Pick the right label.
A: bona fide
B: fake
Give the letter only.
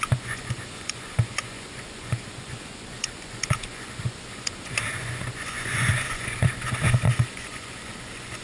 B